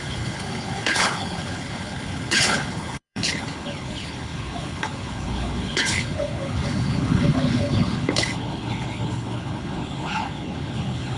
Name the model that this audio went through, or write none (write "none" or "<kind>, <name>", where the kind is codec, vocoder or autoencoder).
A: codec, HILCodec